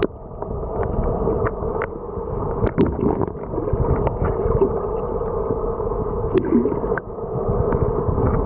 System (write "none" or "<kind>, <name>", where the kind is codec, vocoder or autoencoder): none